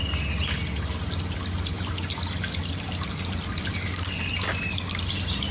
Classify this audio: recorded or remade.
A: recorded